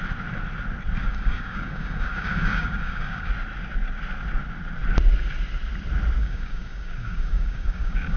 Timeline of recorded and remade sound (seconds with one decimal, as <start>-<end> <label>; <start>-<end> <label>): 0.0-1.0 recorded; 1.0-3.3 remade; 3.3-6.2 recorded; 6.2-8.2 remade